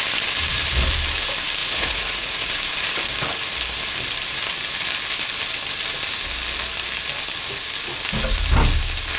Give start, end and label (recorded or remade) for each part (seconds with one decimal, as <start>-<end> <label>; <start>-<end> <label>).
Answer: 0.0-1.6 recorded; 1.6-2.5 remade; 2.5-9.2 recorded